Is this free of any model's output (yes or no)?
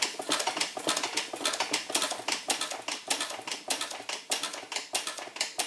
yes